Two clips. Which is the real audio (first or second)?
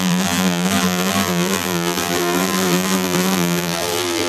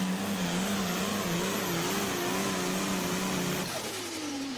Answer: second